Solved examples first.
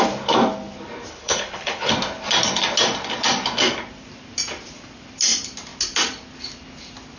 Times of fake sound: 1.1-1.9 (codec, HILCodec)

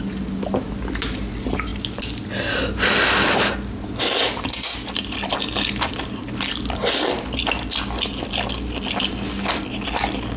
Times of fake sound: none

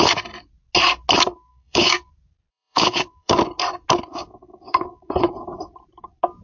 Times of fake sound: 1.5-2.1 (codec, DAC); 2.5-3.4; 4.1-5.1

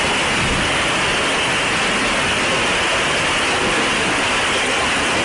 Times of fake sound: none

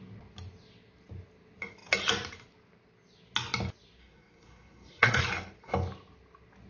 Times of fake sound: 4.0-5.2 (codec, SNAC)

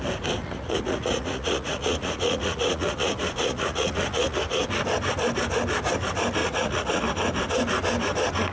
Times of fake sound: 0.4-4.4 (vocoder, Vocos); 6.4-7.0

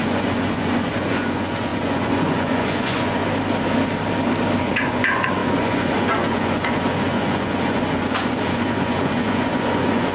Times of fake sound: 0.0-3.2 (vocoder, Vocos); 4.6-10.1

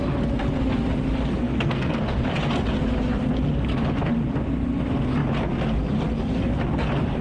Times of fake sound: 1.3-2.2 (codec, SNAC)